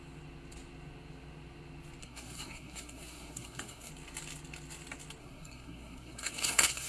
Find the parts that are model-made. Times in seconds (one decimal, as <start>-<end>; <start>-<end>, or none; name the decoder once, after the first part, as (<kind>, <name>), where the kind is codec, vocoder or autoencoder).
2.0-3.9 (codec, SNAC); 5.2-6.9